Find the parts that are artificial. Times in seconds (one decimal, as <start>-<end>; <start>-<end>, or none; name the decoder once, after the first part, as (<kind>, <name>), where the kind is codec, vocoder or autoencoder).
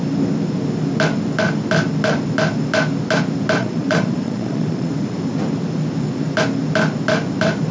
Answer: 3.6-4.9 (vocoder, Vocos)